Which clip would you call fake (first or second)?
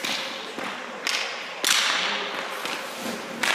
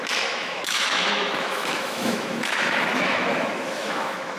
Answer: second